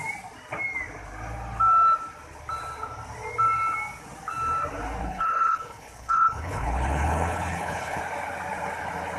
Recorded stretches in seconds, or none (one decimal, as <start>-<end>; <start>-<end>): 0.0-5.0; 8.0-9.2